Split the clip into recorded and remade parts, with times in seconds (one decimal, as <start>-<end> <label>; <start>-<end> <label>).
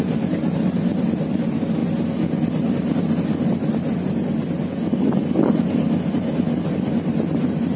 0.0-7.8 recorded